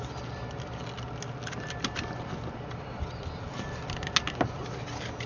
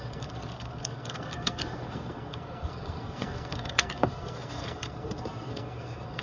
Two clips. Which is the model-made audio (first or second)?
second